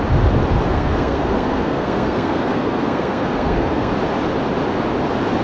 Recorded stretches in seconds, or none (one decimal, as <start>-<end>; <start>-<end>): 0.0-0.7; 3.9-5.4